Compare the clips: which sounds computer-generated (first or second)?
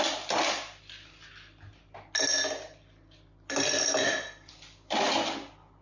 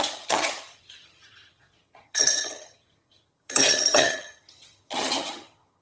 second